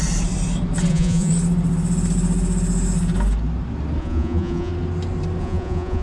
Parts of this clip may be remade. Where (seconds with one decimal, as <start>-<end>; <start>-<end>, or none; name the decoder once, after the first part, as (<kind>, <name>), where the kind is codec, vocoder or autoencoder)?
0.9-1.3 (vocoder, Vocos); 4.0-4.7; 5.4-6.0